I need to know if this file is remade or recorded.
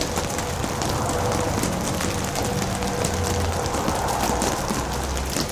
recorded